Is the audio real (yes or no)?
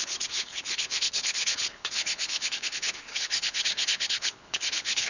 no